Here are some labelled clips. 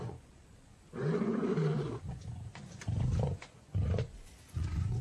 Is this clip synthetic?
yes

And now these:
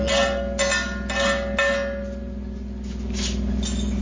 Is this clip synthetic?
no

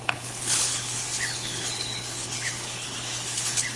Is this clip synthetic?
yes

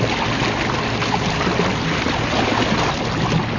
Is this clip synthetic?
no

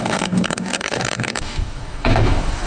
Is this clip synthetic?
yes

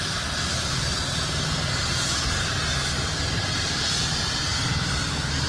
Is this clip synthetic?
no